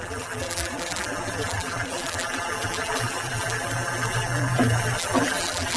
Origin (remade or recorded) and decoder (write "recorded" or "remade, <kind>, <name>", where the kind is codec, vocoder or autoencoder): remade, vocoder, BigVGAN v2